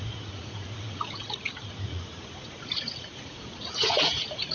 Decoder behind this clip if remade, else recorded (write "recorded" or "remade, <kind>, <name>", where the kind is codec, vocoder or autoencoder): remade, vocoder, Vocos